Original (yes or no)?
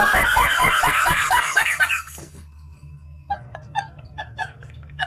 no